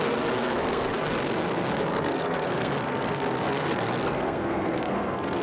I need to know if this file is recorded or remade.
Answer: remade